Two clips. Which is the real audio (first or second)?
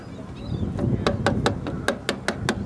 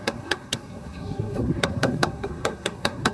first